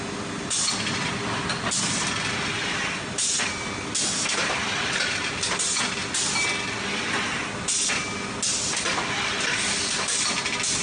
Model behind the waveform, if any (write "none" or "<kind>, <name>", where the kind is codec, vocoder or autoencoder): none